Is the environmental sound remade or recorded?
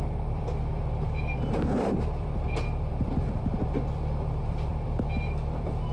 remade